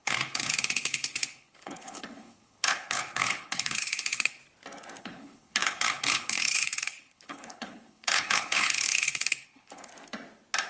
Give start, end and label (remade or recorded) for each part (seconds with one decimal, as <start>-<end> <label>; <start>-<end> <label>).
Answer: 0.0-4.4 remade; 4.4-5.0 recorded; 5.0-9.9 remade; 9.9-10.7 recorded